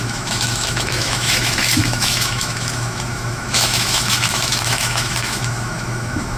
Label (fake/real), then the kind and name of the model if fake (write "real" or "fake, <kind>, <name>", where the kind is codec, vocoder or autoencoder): fake, autoencoder, DAC-VAE